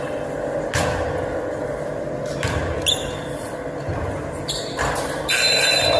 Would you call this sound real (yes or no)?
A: yes